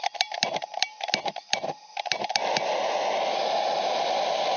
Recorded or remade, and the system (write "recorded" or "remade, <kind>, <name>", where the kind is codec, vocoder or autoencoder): recorded